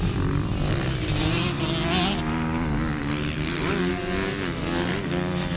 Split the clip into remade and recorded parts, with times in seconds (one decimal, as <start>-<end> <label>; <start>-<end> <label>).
0.0-5.6 recorded